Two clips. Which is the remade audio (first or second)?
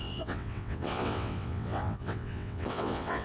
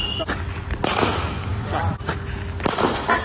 first